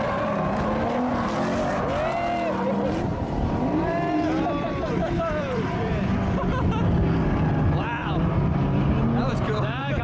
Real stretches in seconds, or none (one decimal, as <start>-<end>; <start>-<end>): 0.0-3.1; 5.9-8.0